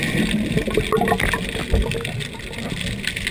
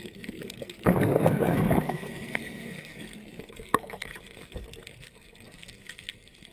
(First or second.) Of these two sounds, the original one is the first